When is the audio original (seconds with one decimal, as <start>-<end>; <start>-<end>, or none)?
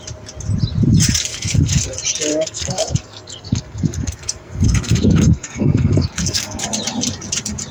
0.0-1.3; 1.8-2.3; 6.6-7.7